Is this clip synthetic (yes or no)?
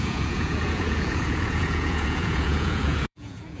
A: yes